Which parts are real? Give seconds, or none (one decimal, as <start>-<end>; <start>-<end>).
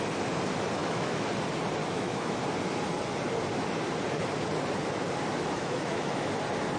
0.0-0.8; 1.3-1.8; 2.4-5.3; 6.3-6.8